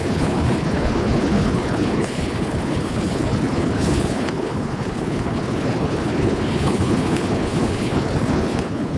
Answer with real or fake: fake